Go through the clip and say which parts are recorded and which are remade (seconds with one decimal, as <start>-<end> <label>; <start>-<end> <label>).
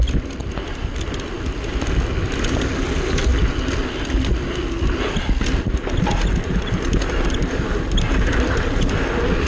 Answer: 0.0-0.4 recorded; 0.4-2.0 remade; 2.0-9.5 recorded